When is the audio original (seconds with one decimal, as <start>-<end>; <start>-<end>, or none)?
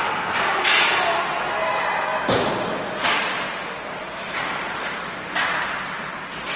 0.0-6.6